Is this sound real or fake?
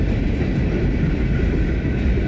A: real